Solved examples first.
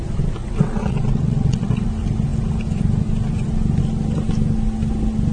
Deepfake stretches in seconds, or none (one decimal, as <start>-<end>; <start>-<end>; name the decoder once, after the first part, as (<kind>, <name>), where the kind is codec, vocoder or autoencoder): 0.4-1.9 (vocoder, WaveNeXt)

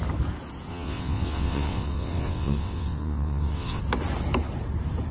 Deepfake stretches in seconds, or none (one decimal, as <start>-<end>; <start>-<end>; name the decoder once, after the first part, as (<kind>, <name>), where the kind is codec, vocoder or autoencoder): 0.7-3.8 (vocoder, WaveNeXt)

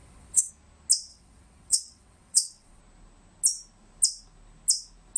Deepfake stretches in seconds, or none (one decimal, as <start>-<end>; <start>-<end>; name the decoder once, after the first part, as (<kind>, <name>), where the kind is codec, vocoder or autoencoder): 0.0-0.5 (vocoder, WaveNeXt); 1.1-2.8

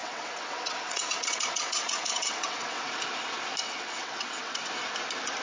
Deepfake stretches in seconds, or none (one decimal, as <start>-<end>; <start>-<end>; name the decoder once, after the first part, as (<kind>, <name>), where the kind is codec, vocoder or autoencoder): 0.0-2.9 (vocoder, WaveNeXt); 3.6-4.7

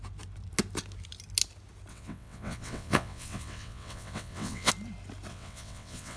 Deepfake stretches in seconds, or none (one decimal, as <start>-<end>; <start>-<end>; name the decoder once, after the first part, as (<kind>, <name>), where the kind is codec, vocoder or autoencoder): 1.9-4.7 (vocoder, WaveNeXt); 5.3-6.2

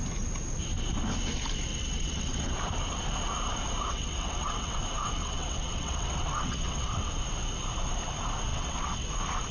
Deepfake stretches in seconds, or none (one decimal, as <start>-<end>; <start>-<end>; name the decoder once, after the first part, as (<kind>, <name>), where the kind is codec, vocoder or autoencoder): 1.7-2.5 (vocoder, WaveNeXt); 3.9-4.8; 5.2-7.1; 8.5-9.1

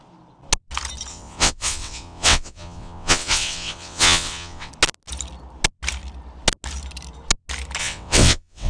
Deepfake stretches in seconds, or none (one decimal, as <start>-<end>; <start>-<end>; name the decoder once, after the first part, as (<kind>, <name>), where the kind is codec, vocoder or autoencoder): 1.1-4.7 (vocoder, WaveNeXt); 7.8-8.7